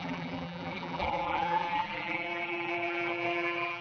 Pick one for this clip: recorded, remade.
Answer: remade